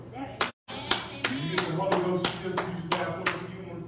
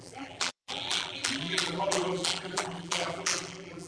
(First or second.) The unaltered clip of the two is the first